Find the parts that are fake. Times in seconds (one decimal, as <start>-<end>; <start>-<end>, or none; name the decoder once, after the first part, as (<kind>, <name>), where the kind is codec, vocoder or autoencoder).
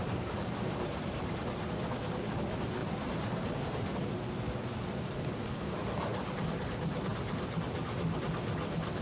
0.0-1.2 (vocoder, BigVGAN v2); 2.8-3.6